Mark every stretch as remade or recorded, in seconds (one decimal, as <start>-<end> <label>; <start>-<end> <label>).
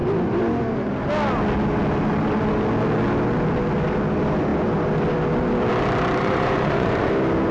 0.0-6.2 recorded; 6.2-7.1 remade; 7.1-7.5 recorded